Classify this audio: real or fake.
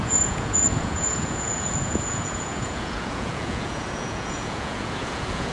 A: fake